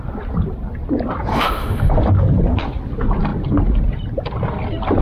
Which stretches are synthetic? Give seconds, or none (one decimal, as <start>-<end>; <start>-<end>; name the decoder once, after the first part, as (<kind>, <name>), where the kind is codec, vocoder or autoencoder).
1.3-1.9 (autoencoder, DAC-VAE)